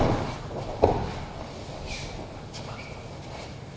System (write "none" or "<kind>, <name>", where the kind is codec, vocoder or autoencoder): none